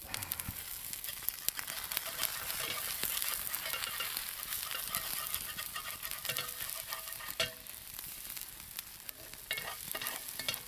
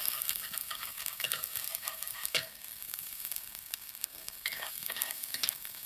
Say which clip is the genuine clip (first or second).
first